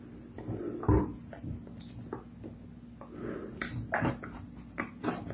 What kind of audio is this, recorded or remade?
recorded